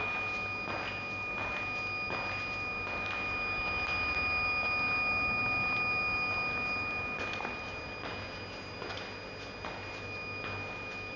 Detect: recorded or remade recorded